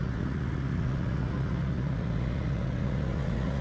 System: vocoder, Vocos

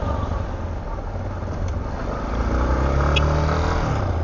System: none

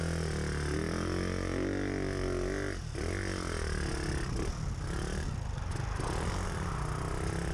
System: none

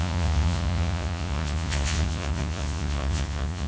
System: vocoder, Vocos